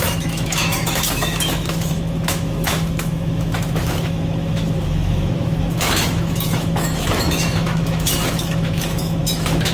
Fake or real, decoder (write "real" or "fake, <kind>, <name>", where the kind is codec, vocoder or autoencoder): fake, autoencoder, DAC-VAE